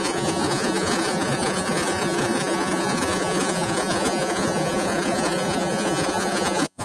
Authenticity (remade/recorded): remade